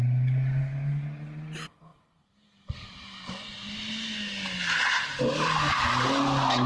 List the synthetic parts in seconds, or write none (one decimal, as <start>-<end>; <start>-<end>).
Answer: none